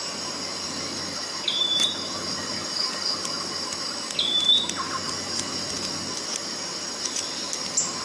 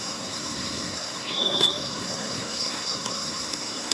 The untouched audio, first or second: first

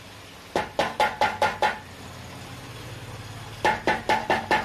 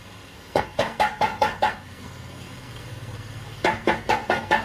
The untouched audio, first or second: first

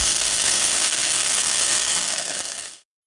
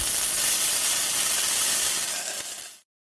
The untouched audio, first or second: second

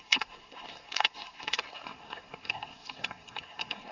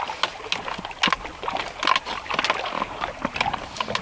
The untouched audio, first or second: second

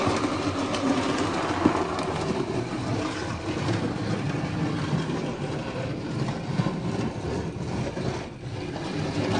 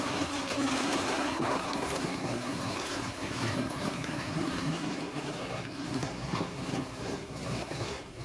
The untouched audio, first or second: first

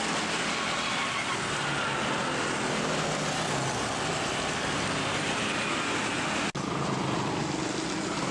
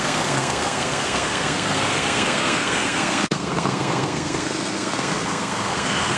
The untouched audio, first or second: first